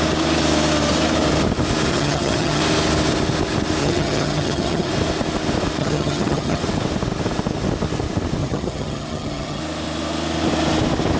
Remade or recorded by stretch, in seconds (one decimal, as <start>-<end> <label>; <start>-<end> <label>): 0.0-1.9 recorded; 1.9-2.6 remade; 2.6-3.8 recorded; 3.8-4.9 remade; 4.9-5.8 recorded; 5.8-6.6 remade; 6.6-8.4 recorded; 8.4-9.6 remade; 9.6-11.2 recorded